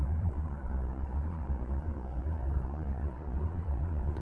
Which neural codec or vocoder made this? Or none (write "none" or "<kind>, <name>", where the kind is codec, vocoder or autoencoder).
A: vocoder, Vocos